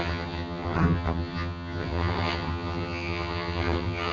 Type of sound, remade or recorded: remade